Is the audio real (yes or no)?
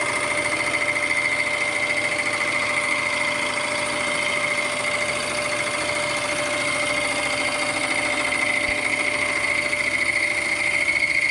yes